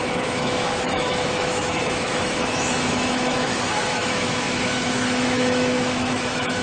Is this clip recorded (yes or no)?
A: no